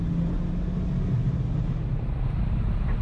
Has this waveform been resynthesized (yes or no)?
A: no